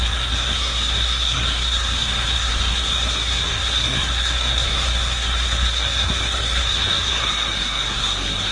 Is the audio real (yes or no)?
no